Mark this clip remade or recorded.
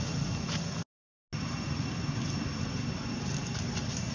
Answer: recorded